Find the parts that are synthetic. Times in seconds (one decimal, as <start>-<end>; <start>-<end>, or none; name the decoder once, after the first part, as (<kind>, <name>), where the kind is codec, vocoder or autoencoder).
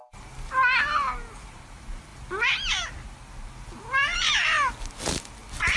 none